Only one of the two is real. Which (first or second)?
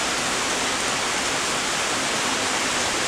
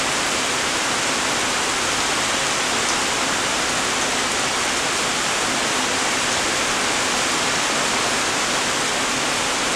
second